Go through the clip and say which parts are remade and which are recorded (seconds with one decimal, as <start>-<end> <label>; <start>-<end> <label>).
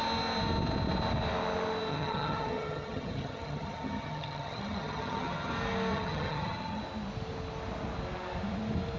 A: 0.0-1.9 recorded; 1.9-5.5 remade; 5.5-5.9 recorded; 5.9-6.8 remade; 6.8-9.0 recorded